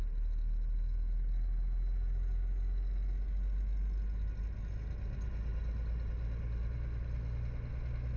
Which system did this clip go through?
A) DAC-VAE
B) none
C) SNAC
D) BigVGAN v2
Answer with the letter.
B